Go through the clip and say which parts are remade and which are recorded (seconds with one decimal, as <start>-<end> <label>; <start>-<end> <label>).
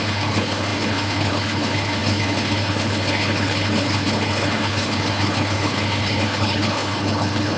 0.0-7.6 remade